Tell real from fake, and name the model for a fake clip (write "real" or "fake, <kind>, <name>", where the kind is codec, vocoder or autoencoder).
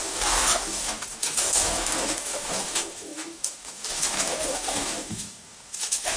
fake, codec, DAC